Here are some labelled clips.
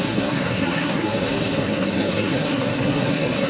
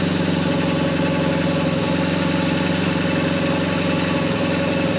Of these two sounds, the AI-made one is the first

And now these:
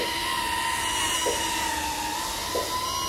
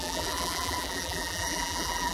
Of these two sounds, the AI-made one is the second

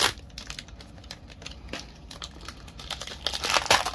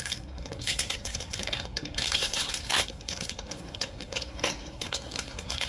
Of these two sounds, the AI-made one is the second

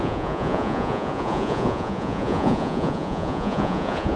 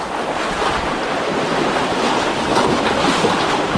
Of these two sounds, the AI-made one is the first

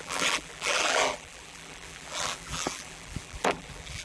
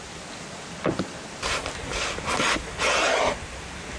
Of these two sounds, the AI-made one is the first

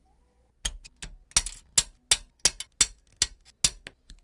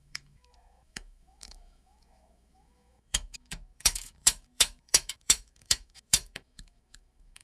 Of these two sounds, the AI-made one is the second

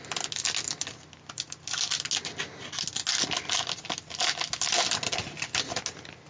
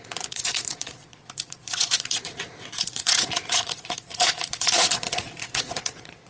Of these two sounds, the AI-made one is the second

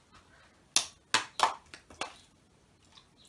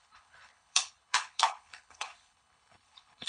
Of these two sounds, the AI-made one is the second